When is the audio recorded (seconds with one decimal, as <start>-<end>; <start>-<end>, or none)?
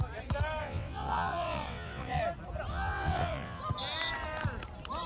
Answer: 0.0-0.6; 2.2-2.7; 3.6-5.1